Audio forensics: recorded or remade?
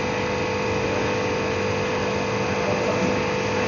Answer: recorded